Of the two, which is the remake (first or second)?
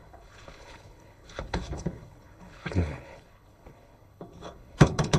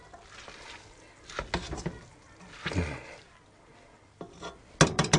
first